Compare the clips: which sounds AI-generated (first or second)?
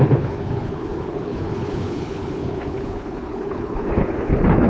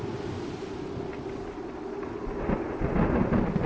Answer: first